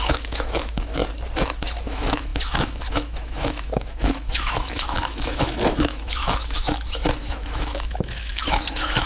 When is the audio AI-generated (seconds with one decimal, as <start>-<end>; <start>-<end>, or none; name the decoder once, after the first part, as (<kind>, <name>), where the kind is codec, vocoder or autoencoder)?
0.0-1.0 (autoencoder, DAC-VAE); 1.8-9.1